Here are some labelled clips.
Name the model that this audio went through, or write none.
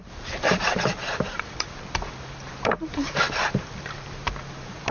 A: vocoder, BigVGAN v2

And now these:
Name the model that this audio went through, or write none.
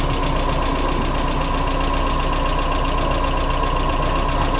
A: none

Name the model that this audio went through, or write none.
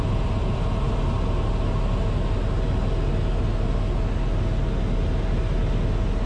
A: none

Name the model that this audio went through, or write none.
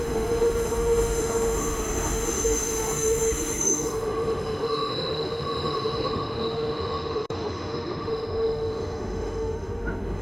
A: autoencoder, DAC-VAE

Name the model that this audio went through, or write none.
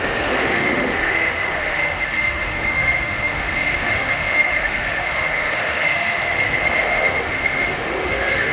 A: autoencoder, DAC-VAE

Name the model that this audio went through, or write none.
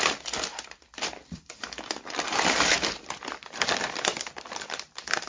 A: vocoder, BigVGAN v2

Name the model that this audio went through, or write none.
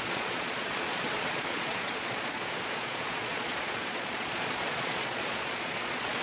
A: vocoder, Vocos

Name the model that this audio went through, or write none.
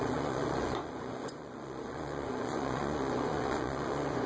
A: vocoder, Vocos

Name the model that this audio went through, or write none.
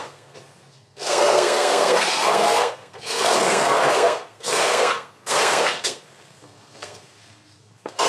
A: codec, SNAC